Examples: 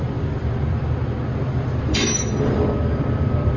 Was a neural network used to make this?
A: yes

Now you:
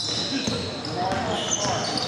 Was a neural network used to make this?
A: no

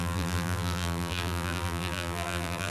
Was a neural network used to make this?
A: yes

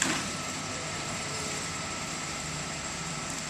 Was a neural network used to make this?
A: yes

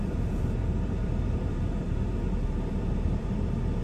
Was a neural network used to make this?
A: yes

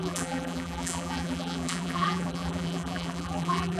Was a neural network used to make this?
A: yes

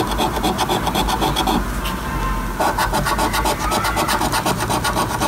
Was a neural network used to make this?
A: no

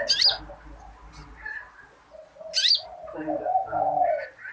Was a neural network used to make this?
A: no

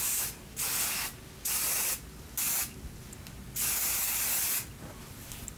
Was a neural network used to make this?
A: yes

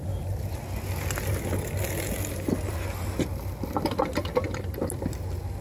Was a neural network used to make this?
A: no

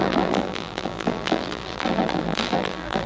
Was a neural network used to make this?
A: yes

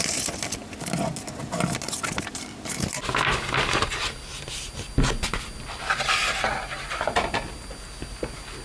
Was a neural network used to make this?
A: no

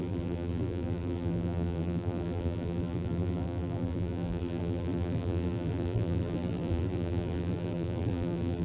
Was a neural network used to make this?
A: yes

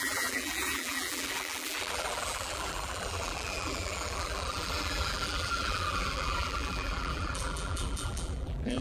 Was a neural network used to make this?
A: yes